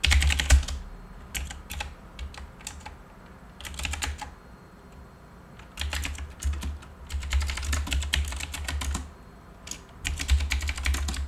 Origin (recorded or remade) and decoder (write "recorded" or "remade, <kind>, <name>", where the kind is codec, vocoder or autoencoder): recorded